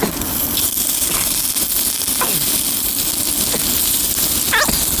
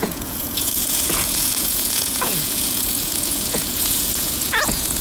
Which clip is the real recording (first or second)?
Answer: first